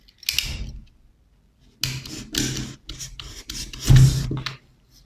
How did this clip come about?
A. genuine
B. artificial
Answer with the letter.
A